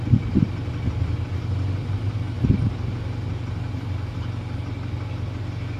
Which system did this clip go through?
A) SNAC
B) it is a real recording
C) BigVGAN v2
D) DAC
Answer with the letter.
B